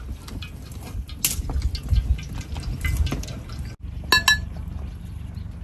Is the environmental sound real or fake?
real